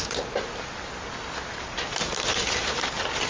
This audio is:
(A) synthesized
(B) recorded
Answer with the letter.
B